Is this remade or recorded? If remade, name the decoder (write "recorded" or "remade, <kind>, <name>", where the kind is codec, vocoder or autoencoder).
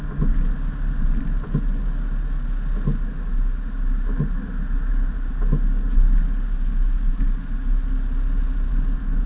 recorded